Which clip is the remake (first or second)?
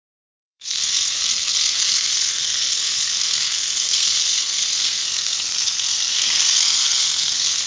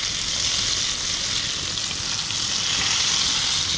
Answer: first